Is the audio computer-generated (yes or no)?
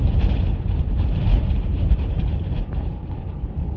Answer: yes